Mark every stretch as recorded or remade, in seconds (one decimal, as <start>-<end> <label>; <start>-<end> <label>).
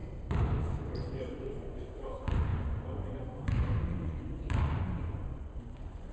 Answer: 0.0-0.6 recorded; 0.6-6.1 remade